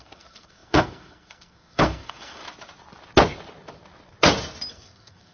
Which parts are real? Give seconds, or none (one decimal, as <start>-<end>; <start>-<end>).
2.4-4.7